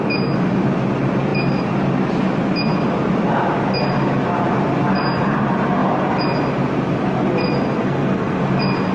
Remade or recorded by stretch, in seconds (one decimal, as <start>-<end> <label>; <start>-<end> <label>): 0.0-7.8 recorded; 7.8-8.4 remade; 8.4-8.9 recorded